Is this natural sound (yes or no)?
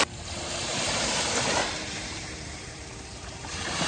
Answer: no